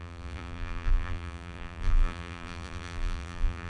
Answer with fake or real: fake